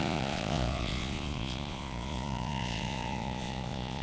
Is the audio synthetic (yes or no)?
yes